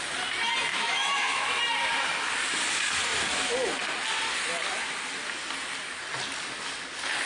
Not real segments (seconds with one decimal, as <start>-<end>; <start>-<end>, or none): 0.7-1.6